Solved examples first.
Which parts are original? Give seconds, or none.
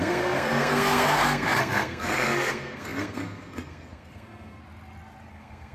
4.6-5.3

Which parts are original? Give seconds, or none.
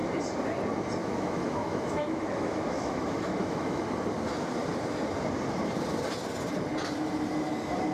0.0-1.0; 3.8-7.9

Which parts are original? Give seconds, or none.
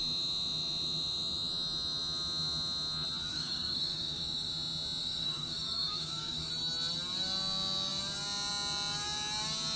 0.0-3.3; 4.5-5.0; 6.5-9.8